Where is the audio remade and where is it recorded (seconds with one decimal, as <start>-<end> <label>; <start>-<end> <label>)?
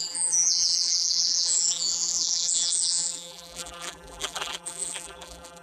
0.0-5.6 remade